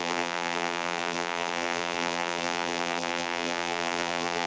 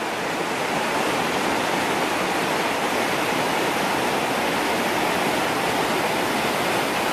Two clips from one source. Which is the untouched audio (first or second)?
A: second